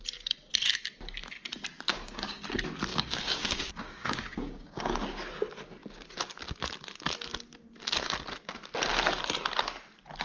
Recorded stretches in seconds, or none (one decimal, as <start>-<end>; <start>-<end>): 0.0-1.9; 2.4-2.9; 5.0-10.2